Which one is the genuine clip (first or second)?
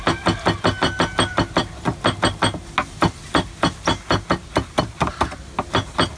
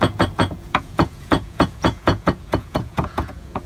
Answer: first